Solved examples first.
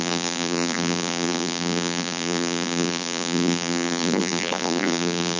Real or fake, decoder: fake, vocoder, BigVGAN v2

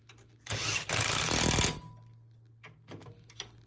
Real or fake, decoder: real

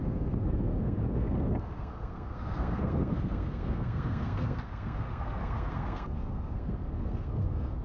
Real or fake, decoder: fake, codec, SNAC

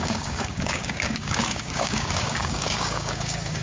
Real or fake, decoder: fake, codec, DAC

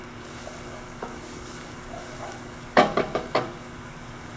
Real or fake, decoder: fake, codec, DAC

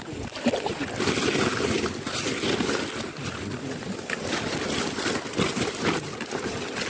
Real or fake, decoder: real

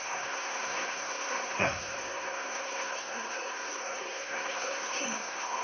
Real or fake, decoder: fake, codec, SNAC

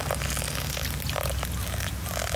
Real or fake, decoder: real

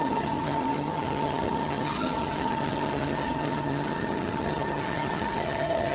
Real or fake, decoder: fake, vocoder, HiFi-GAN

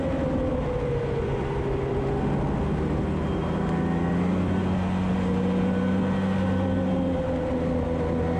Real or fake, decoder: real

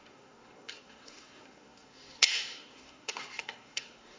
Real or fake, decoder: fake, codec, SNAC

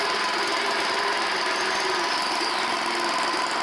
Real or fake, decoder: real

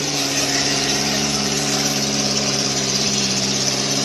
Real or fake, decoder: fake, vocoder, BigVGAN v2